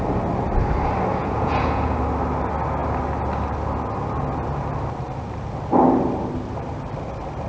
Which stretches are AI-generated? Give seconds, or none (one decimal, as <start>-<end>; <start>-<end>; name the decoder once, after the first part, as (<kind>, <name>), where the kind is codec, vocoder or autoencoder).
1.2-2.0 (vocoder, Vocos)